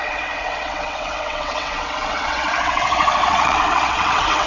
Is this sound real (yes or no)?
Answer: no